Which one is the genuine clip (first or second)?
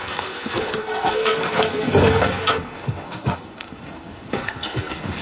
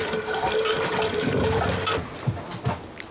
second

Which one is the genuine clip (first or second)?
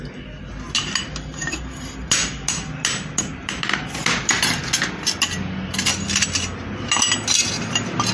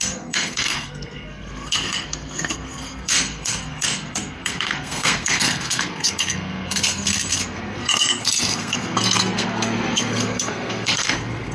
first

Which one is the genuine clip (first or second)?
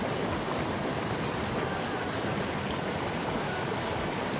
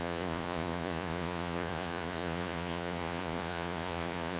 first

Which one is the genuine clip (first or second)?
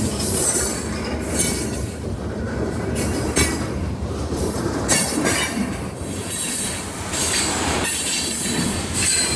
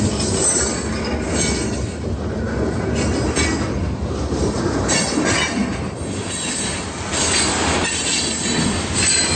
second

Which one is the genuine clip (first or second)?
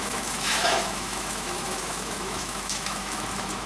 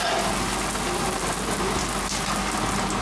second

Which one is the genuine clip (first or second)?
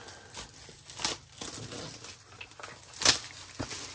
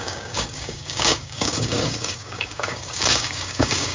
first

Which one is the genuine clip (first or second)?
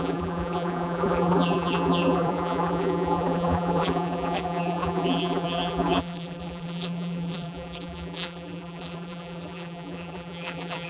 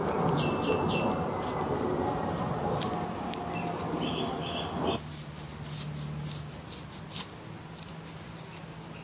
second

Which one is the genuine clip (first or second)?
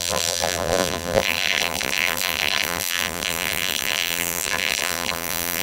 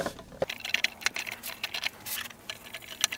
second